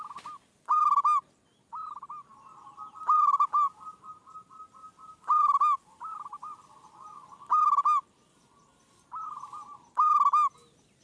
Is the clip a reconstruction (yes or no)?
no